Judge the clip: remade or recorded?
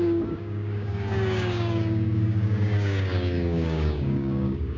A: remade